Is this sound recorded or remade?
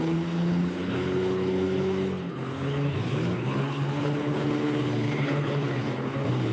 remade